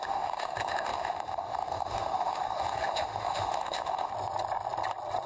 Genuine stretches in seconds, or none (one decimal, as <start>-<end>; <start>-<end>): 4.1-5.3

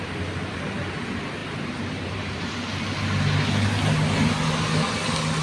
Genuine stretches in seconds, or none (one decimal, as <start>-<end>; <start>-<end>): 0.0-1.4; 2.5-5.4

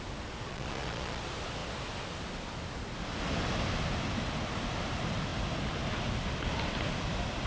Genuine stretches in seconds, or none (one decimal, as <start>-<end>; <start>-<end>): 0.0-0.5; 1.2-7.5